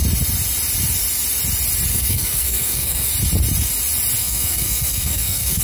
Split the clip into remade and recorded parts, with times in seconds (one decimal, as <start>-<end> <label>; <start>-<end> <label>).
0.0-1.9 recorded; 1.9-3.1 remade; 3.1-4.2 recorded; 4.2-5.6 remade